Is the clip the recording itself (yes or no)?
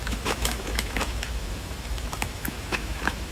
no